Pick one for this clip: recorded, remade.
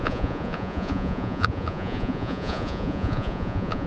remade